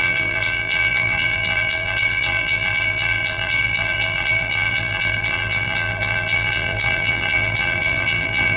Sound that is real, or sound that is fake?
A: fake